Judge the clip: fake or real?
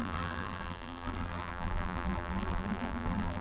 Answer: fake